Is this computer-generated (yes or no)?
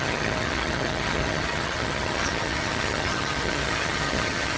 yes